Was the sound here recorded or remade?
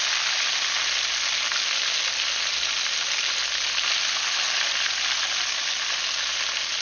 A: recorded